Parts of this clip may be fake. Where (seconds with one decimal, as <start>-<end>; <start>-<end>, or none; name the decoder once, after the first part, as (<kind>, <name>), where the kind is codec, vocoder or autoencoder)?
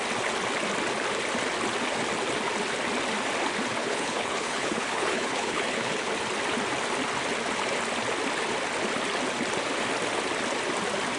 3.8-6.1 (codec, HILCodec)